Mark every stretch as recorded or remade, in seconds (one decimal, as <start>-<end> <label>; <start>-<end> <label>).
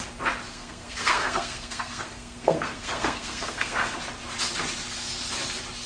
0.0-0.5 recorded; 0.5-4.0 remade; 4.0-5.9 recorded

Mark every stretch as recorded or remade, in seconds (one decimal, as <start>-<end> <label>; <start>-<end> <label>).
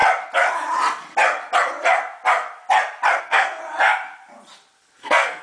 0.0-3.2 recorded; 3.2-3.6 remade; 3.6-5.0 recorded; 5.0-5.4 remade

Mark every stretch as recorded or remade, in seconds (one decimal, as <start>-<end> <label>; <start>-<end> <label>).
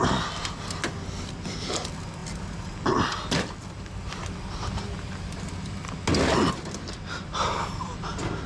0.0-8.5 recorded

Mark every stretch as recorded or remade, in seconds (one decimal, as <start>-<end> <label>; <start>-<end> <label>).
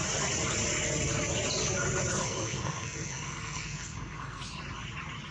0.0-2.2 recorded; 2.2-4.4 remade; 4.4-5.3 recorded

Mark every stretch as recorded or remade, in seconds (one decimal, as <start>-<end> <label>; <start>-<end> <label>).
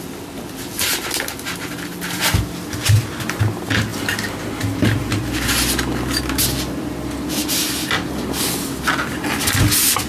0.0-10.1 recorded